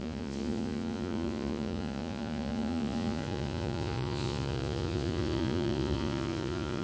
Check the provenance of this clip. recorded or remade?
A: remade